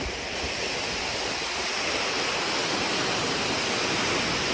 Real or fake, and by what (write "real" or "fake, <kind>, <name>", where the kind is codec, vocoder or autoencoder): real